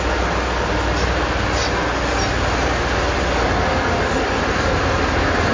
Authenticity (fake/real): real